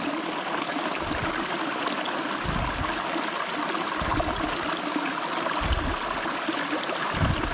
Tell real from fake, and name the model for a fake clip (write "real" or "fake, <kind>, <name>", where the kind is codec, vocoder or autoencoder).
real